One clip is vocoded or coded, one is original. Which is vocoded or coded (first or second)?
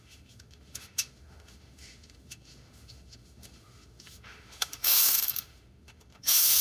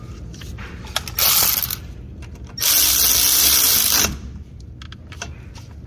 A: first